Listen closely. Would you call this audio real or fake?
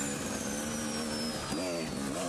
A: real